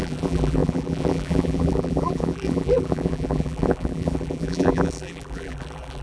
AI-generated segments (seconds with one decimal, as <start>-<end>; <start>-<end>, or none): 0.0-6.0